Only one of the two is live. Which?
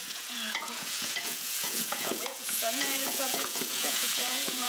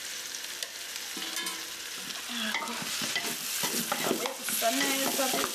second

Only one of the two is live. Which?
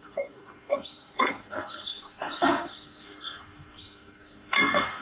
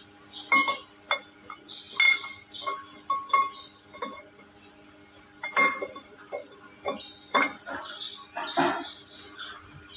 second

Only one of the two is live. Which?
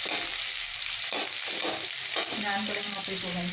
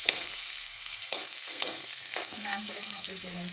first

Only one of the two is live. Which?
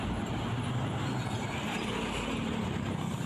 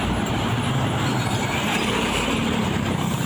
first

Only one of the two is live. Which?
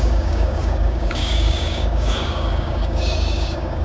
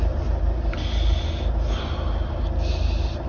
second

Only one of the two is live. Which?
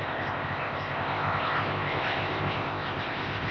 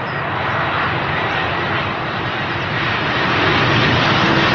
second